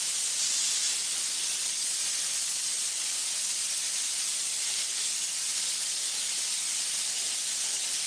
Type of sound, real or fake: real